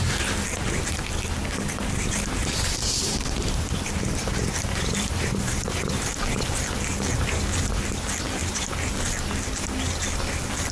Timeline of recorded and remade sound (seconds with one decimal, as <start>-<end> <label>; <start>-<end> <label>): 0.0-2.4 recorded; 2.4-6.1 remade; 6.1-8.4 recorded; 8.4-8.9 remade; 8.9-10.7 recorded